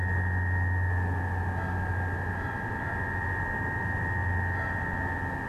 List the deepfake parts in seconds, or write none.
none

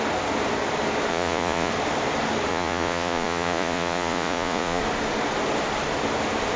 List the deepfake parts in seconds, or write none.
1.1-1.7; 2.5-4.8

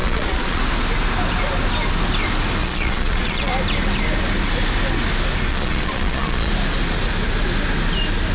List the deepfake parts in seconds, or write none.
0.0-0.6; 2.6-3.5; 5.5-6.5

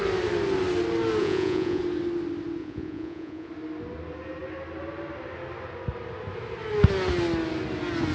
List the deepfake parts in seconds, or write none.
1.2-1.8; 2.6-3.5